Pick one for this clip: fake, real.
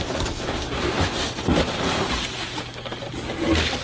real